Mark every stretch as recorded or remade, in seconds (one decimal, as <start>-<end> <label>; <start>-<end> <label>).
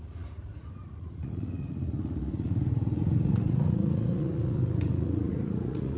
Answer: 0.0-6.0 remade